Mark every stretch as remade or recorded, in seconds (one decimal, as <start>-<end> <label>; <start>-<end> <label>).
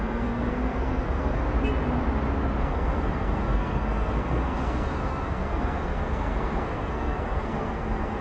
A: 0.0-1.4 remade; 1.4-2.6 recorded; 2.6-8.2 remade